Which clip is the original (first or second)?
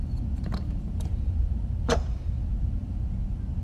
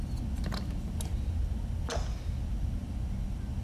second